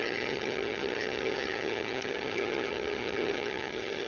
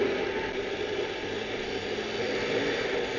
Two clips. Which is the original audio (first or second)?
second